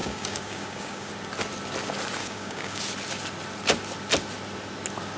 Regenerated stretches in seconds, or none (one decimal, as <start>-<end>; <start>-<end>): 0.0-1.1; 2.2-2.8